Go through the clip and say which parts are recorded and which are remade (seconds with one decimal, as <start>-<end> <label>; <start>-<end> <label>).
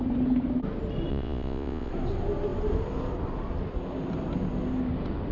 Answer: 0.0-1.1 recorded; 1.1-1.9 remade; 1.9-5.3 recorded